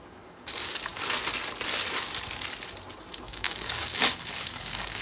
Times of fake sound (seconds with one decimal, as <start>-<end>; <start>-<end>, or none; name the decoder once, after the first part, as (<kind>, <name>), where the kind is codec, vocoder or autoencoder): 0.0-0.9 (codec, DAC); 3.1-5.0